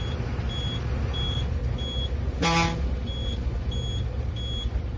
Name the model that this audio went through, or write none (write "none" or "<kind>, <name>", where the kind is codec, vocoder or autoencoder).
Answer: none